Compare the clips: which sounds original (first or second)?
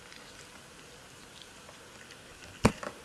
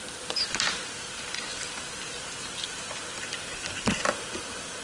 first